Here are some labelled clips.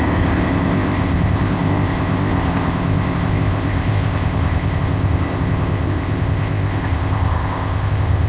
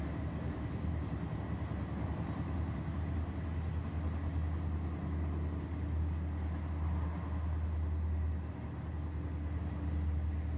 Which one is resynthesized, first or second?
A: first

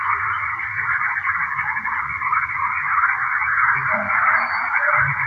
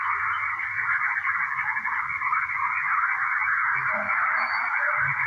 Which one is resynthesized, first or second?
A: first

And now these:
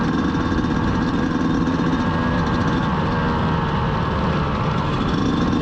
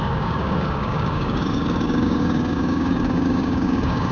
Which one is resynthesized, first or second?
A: second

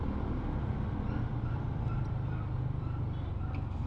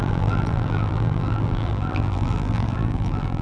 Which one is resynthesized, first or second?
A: second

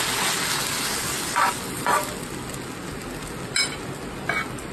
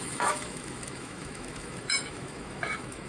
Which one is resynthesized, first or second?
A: second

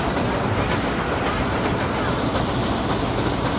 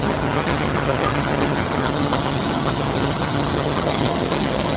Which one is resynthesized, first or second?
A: second